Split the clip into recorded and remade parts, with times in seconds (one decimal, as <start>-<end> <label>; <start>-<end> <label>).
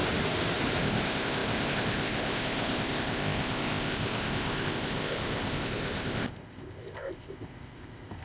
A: 0.0-0.8 recorded; 0.8-8.2 remade